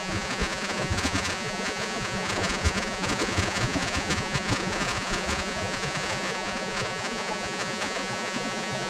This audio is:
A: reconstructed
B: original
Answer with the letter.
A